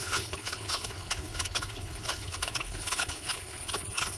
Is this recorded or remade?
remade